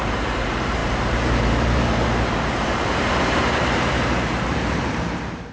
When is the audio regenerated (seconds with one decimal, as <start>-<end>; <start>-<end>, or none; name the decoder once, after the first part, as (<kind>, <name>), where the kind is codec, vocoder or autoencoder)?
0.0-5.5 (vocoder, BigVGAN v2)